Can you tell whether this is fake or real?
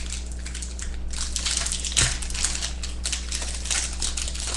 real